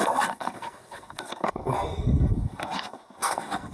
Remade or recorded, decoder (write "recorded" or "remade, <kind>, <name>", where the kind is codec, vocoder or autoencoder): remade, codec, SNAC